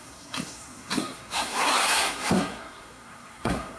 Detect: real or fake fake